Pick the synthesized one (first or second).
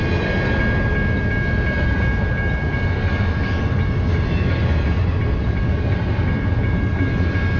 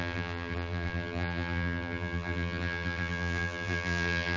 second